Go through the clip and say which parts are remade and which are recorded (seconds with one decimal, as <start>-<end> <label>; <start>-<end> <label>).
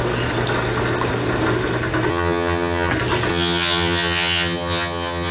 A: 0.0-2.1 recorded; 2.1-2.9 remade; 2.9-3.3 recorded; 3.3-5.3 remade